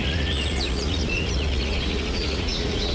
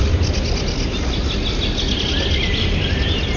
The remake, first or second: first